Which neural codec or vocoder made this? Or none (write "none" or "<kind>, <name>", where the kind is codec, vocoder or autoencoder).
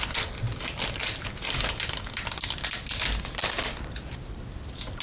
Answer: none